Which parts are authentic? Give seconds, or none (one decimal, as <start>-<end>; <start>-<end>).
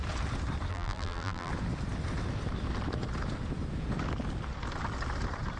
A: 0.0-0.7; 1.5-5.6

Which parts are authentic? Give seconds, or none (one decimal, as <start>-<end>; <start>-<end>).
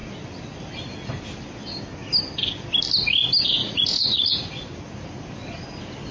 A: 0.0-3.6; 4.3-6.1